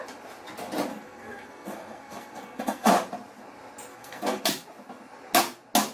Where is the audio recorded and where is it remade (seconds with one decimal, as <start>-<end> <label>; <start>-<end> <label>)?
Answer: 0.0-0.9 recorded; 0.9-2.9 remade; 2.9-3.9 recorded; 3.9-4.4 remade; 4.4-5.9 recorded